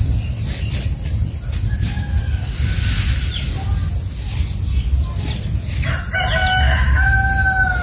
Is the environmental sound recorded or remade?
recorded